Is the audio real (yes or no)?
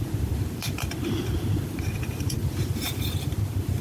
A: no